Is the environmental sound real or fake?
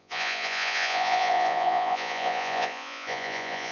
fake